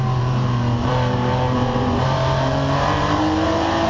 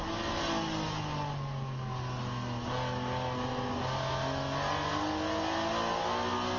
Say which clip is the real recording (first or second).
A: second